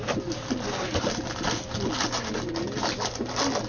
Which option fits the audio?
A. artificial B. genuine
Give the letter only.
B